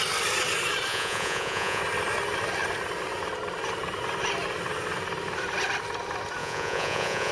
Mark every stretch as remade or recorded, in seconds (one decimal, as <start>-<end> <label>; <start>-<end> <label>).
0.0-0.9 recorded; 0.9-1.8 remade; 1.8-6.4 recorded; 6.4-7.3 remade